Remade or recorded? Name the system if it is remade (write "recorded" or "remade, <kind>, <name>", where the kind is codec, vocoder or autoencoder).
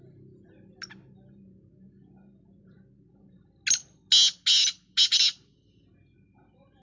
recorded